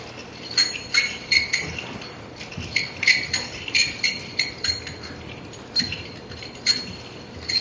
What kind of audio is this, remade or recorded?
remade